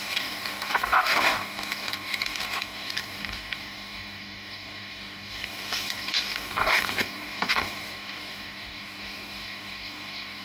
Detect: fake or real fake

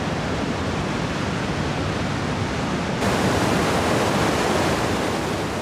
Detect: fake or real real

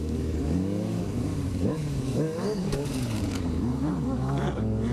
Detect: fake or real fake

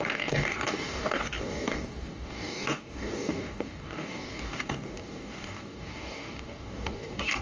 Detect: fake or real fake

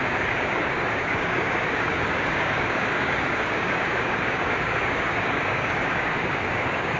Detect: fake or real fake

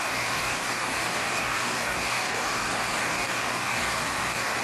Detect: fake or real fake